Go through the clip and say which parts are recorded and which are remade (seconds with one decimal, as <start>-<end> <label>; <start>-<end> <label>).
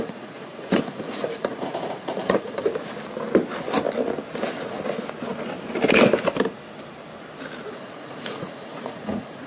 0.0-2.7 remade; 2.7-7.7 recorded; 7.7-9.5 remade